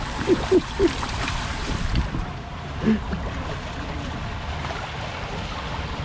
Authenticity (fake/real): real